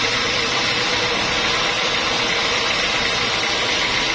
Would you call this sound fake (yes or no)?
no